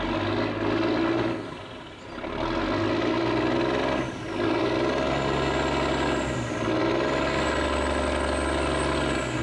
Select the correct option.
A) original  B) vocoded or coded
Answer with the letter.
A